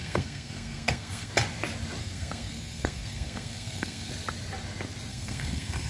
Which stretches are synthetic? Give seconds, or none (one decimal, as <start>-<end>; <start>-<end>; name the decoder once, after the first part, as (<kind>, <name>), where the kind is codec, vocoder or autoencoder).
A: 0.0-1.3 (codec, SNAC); 2.0-4.1; 5.1-5.9